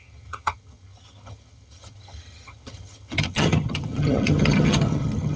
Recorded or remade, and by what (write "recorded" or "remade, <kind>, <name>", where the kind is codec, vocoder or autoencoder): remade, vocoder, HiFi-GAN